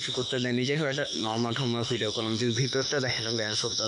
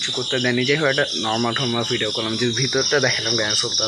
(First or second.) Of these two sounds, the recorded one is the second